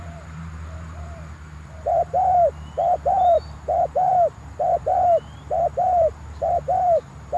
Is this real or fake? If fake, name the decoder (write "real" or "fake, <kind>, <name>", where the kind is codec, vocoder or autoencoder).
fake, vocoder, BigVGAN v2